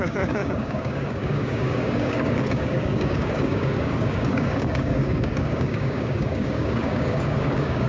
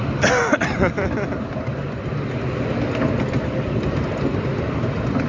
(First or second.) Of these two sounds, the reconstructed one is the first